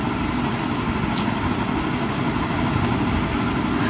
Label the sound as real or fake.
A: real